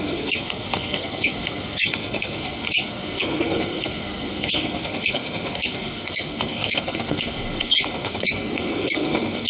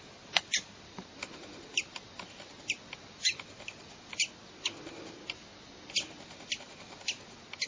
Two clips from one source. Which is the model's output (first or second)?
first